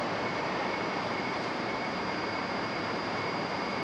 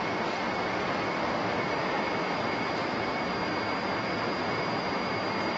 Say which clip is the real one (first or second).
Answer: second